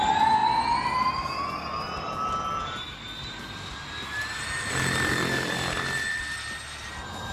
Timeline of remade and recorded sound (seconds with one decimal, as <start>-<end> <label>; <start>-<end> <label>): 0.0-7.3 recorded